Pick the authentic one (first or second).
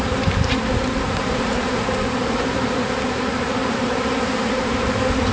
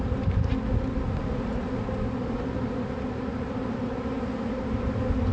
second